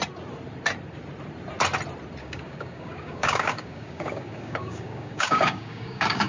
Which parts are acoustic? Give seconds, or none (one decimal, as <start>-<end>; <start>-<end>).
0.0-2.2